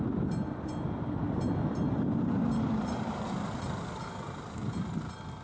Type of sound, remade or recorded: recorded